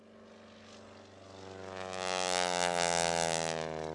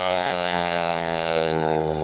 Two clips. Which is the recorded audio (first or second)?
first